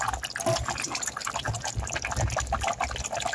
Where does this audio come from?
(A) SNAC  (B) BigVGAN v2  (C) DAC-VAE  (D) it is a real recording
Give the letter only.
D